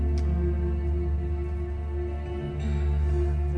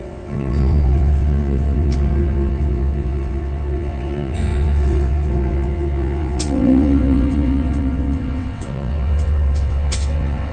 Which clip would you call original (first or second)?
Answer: first